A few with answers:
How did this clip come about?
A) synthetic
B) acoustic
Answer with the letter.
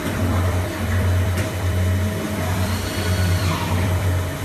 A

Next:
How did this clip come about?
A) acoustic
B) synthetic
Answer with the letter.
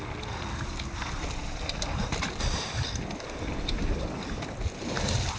A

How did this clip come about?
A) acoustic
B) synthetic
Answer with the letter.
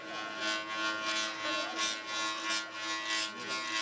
A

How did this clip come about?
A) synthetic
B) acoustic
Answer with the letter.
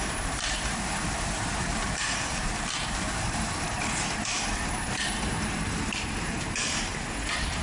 A